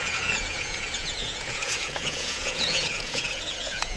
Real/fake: fake